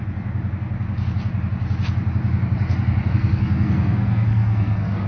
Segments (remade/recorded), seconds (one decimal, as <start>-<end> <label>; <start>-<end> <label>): 0.0-3.1 recorded; 3.1-5.1 remade